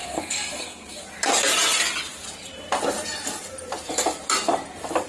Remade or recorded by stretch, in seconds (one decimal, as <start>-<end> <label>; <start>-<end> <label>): 0.0-1.0 remade; 1.0-5.1 recorded